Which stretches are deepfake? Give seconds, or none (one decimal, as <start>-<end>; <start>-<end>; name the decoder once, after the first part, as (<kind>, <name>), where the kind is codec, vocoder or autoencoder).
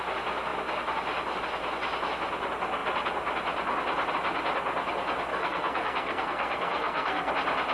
5.3-7.3 (codec, SNAC)